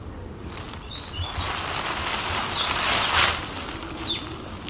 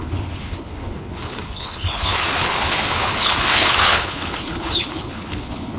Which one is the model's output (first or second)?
second